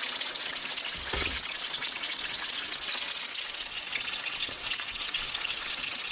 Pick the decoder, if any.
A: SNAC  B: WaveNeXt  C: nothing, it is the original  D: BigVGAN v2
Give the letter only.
B